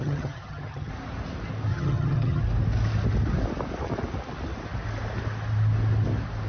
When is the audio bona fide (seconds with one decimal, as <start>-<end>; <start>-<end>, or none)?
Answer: 0.9-1.7; 2.4-6.5

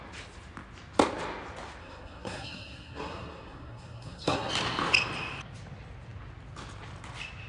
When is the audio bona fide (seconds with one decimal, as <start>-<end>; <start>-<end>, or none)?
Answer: 0.0-1.8; 4.5-7.5

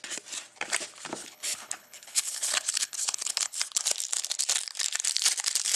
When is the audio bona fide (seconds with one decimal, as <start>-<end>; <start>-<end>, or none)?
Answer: 0.0-1.2; 3.6-5.8

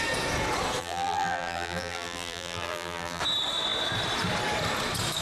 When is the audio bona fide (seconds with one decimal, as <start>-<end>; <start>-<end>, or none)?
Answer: 0.0-0.8; 3.2-5.2

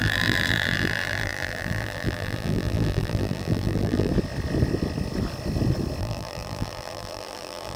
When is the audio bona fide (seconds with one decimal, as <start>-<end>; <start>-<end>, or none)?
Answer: 4.1-6.0

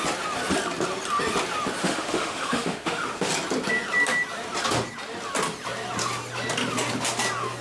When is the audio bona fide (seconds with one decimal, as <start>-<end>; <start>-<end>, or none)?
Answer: 0.0-1.8; 3.3-7.6

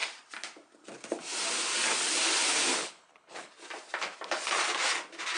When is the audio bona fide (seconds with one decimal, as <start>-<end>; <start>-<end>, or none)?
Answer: 0.0-2.8; 3.5-5.4

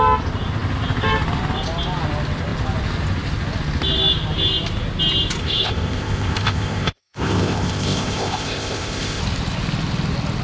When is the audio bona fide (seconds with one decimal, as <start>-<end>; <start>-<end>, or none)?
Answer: 0.0-5.4; 9.2-10.4